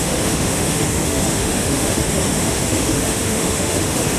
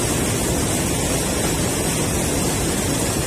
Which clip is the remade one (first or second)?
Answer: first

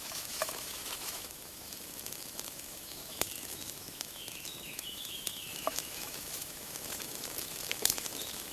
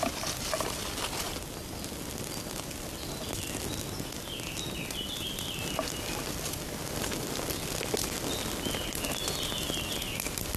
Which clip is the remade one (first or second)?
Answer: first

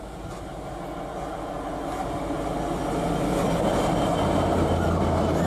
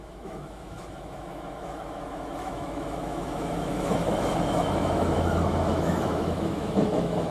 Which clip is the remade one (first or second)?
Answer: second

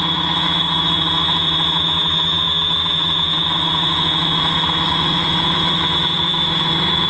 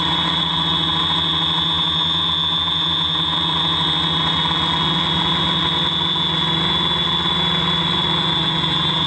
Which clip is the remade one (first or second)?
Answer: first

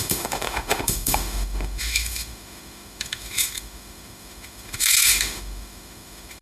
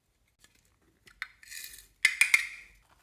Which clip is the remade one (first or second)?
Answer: first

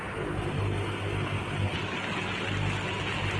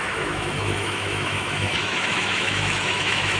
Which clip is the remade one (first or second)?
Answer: second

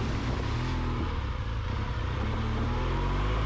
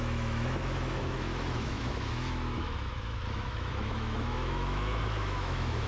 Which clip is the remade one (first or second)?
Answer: second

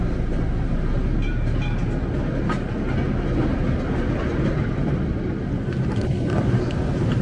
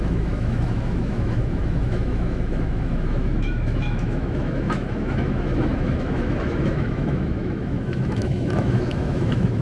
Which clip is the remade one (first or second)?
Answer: second